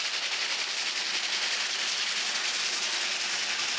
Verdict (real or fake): real